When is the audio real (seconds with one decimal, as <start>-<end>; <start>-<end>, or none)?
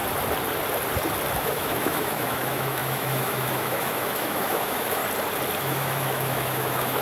0.0-1.4; 5.0-5.6